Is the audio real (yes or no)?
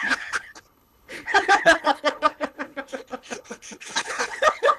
no